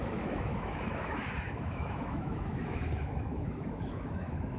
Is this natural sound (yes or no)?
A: no